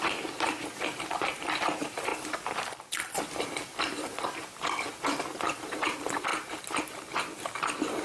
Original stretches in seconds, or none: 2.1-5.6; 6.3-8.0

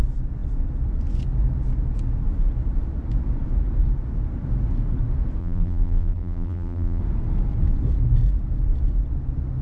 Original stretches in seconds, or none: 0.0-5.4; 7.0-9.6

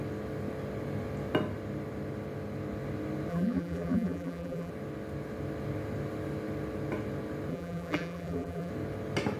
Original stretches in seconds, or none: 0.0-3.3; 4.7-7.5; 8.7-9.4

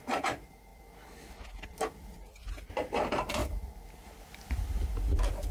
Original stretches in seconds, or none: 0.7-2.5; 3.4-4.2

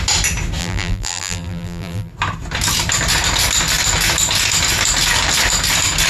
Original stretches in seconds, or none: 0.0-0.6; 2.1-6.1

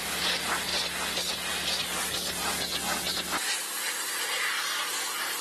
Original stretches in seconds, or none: 0.0-5.4